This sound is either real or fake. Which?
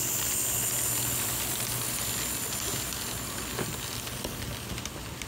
real